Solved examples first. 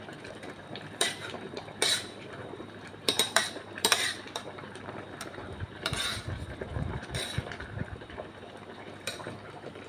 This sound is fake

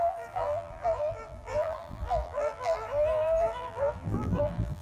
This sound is fake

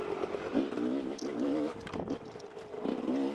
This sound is real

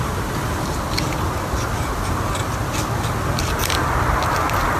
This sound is real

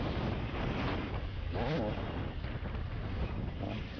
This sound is real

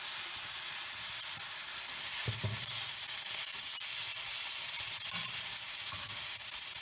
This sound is real